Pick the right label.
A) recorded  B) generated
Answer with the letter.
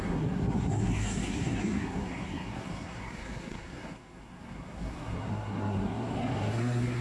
B